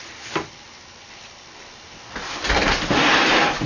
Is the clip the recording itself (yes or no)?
yes